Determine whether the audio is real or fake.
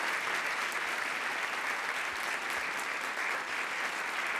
real